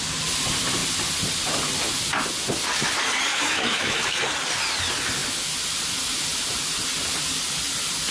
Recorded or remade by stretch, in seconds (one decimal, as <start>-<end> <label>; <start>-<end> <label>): 0.0-3.3 recorded; 3.3-4.2 remade; 4.2-8.1 recorded